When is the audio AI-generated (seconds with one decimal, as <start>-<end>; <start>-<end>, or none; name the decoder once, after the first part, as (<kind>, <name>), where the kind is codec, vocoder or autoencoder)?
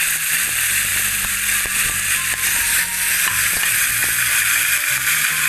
none